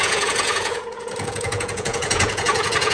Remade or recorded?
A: remade